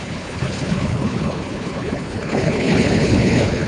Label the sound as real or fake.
fake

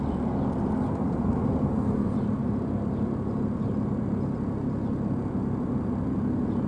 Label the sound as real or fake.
real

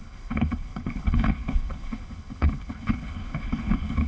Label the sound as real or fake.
fake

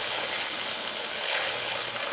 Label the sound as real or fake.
fake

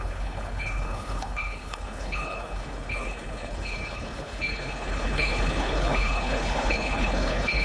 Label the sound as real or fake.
fake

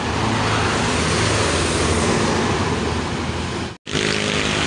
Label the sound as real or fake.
real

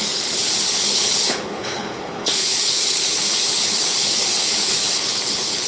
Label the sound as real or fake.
fake